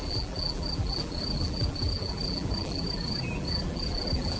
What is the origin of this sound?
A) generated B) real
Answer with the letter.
A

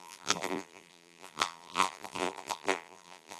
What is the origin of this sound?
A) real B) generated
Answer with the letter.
B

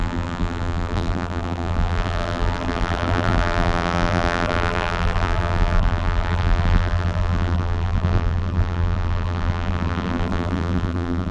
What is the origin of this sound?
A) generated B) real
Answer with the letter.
A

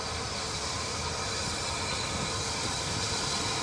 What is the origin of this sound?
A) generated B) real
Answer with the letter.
B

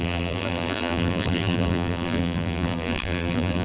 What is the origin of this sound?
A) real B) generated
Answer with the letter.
B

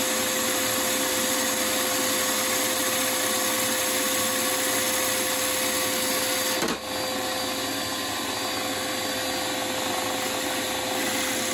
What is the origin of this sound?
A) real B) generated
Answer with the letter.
A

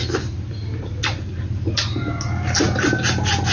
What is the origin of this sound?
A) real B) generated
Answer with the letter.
A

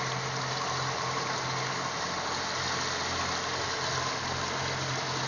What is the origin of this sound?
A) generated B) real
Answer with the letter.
B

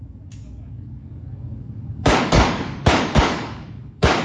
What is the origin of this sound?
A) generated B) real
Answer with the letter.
A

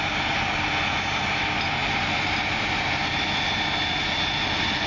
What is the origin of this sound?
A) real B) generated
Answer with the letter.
A